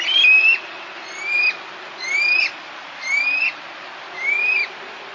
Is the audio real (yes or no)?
yes